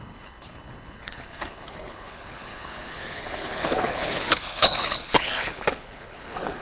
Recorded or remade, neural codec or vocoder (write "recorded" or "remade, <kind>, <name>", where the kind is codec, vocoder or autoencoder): remade, codec, HILCodec